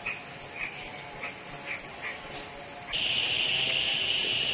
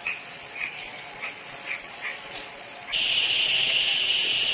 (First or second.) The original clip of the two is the first